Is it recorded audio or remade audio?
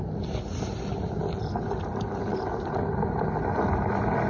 recorded